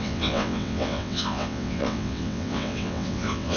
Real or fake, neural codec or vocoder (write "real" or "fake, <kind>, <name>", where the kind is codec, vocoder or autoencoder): fake, vocoder, WaveNeXt